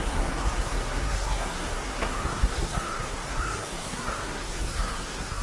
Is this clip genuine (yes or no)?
no